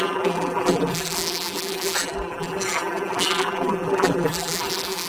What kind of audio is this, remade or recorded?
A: remade